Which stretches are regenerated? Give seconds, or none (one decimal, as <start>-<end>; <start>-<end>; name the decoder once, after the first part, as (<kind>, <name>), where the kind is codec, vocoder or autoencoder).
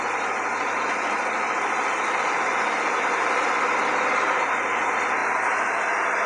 none